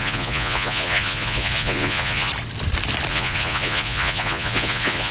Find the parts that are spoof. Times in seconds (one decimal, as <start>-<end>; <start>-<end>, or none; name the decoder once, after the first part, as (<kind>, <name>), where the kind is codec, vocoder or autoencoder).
0.0-2.3 (vocoder, Vocos); 3.1-5.1